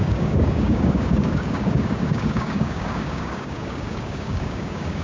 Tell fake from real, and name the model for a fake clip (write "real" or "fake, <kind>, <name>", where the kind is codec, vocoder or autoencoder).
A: fake, codec, DAC